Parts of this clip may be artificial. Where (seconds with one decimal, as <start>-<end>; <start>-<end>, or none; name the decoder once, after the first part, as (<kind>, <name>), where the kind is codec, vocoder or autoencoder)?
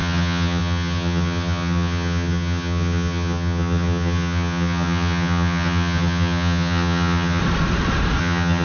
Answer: 0.0-7.4 (vocoder, HiFi-GAN); 8.2-8.6